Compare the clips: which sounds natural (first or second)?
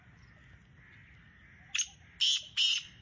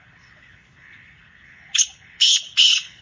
first